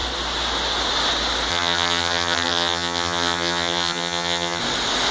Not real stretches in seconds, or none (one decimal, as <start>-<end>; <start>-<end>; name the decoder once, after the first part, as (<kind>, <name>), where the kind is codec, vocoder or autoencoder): 1.5-4.6 (vocoder, HiFi-GAN)